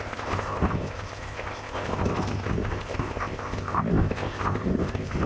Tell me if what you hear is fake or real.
fake